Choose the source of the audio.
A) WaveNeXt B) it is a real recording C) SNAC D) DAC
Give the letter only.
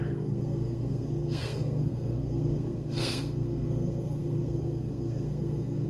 C